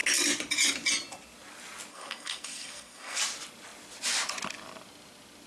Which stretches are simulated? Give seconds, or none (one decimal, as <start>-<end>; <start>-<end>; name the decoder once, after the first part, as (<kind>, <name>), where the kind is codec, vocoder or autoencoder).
1.9-3.2 (codec, SNAC)